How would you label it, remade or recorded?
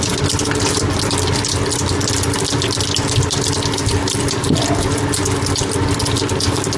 recorded